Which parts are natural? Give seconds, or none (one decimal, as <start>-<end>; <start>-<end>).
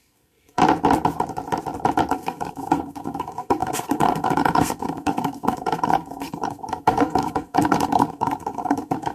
0.6-2.1